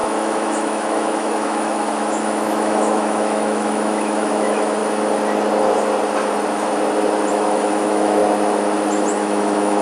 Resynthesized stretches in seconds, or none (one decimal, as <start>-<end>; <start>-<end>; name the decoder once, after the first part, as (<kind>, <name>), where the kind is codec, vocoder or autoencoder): 0.0-4.8 (autoencoder, DAC-VAE); 7.3-8.2; 9.1-9.8